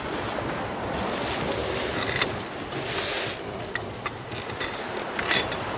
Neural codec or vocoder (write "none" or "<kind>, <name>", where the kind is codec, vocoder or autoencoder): none